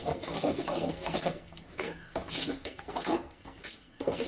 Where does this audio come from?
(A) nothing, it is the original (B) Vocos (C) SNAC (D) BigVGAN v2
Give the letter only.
C